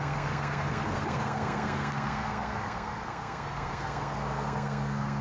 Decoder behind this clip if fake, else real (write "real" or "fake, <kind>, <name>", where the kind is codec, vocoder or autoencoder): fake, codec, SNAC